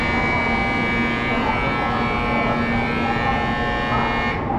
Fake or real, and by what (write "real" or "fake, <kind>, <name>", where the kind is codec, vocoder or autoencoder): real